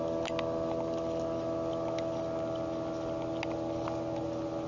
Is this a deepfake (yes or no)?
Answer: no